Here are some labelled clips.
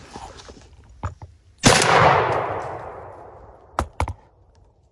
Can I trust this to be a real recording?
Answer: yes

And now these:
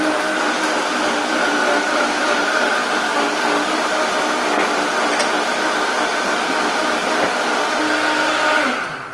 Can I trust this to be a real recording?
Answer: yes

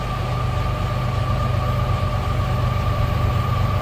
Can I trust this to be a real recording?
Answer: yes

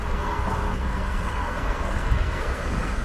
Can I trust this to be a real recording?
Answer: no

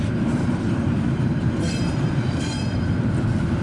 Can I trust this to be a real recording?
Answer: no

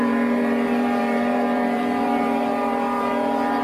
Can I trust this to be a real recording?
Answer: no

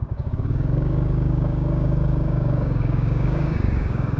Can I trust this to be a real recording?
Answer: no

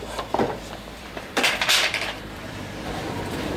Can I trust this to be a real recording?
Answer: no